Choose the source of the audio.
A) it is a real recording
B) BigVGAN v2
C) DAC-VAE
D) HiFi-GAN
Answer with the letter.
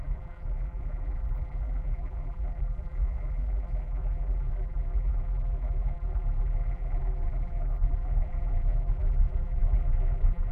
B